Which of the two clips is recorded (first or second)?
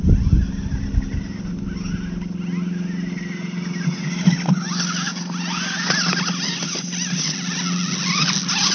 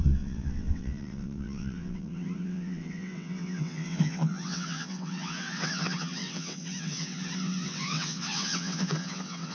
first